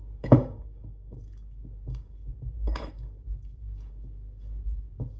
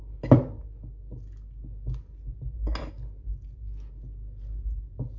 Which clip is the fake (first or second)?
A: first